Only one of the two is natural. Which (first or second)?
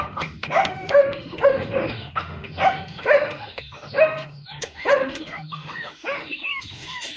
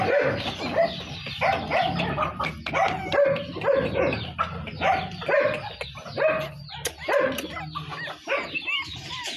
second